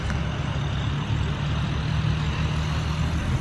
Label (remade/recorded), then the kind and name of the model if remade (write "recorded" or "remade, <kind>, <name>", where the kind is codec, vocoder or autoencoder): recorded